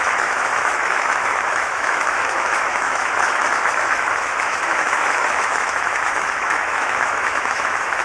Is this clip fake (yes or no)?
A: yes